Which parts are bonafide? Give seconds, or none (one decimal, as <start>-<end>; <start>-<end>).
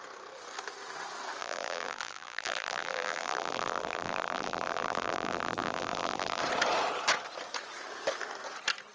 0.0-1.4; 6.4-8.9